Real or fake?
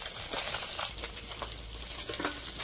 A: real